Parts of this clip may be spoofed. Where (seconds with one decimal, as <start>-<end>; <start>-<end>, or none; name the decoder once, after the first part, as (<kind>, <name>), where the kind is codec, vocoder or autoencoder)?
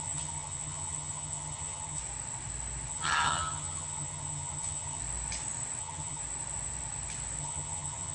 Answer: 0.0-2.0 (vocoder, HiFi-GAN); 2.9-5.0; 5.8-6.2; 7.4-8.1